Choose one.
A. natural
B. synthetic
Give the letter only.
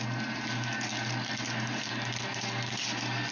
A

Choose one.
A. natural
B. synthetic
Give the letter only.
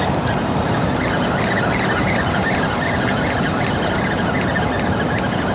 A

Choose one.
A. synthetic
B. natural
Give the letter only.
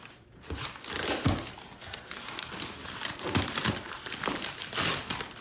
B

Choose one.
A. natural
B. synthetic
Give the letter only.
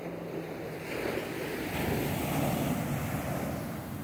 A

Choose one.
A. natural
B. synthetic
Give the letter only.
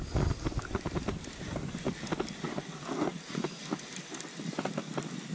A